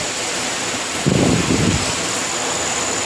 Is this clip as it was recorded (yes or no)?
no